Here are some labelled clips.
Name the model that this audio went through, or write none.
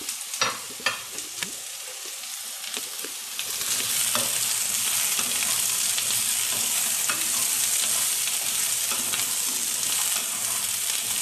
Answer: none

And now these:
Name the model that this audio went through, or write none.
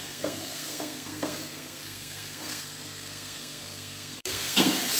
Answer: codec, SNAC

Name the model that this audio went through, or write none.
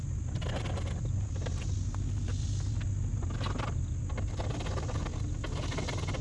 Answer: none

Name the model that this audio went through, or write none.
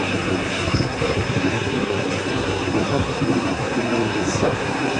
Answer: codec, SNAC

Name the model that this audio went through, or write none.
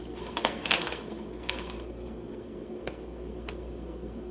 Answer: codec, SNAC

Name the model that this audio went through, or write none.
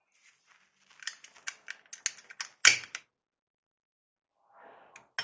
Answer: none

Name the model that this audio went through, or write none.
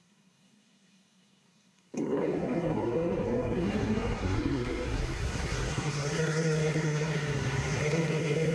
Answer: codec, SNAC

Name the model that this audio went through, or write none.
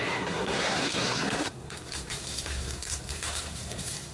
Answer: codec, SNAC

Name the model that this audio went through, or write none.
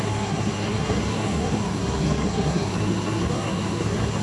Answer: codec, SNAC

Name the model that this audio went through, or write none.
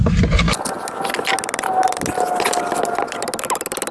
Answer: none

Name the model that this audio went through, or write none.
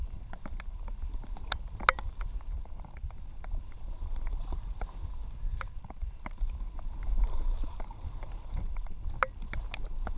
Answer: none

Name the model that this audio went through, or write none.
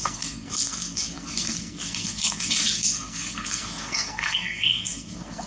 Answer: codec, SNAC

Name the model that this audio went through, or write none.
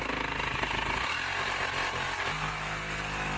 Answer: none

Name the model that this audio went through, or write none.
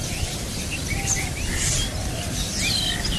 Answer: none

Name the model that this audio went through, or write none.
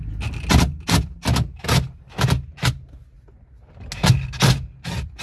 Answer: none